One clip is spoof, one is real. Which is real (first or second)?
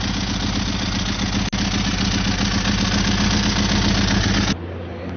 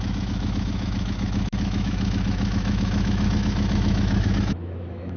first